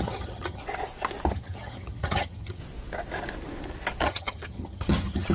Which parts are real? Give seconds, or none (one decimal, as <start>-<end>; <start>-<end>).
0.6-1.3; 2.6-4.0